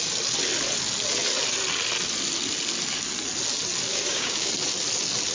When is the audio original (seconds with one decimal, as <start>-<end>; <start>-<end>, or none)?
0.0-3.9; 4.5-5.3